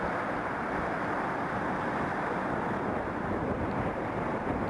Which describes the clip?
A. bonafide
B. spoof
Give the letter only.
B